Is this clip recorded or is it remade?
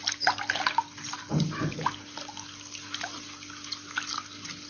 recorded